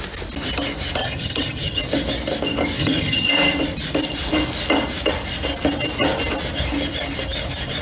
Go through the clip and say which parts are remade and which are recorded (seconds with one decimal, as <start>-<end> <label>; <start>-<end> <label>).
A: 0.0-1.0 recorded; 1.0-1.8 remade; 1.8-2.8 recorded; 2.8-3.3 remade; 3.3-7.8 recorded